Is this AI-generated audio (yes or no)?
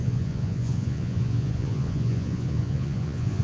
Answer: yes